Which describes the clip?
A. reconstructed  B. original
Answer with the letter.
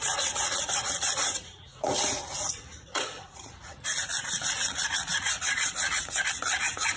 A